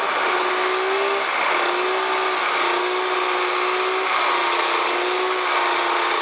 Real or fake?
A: real